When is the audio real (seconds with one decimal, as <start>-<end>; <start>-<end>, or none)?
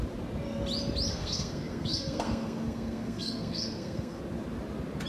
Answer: 0.0-1.1; 4.2-5.1